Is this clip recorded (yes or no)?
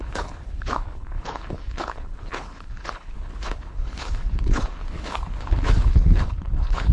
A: no